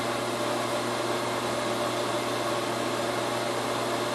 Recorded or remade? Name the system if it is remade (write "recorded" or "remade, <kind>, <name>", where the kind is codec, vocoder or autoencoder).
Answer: recorded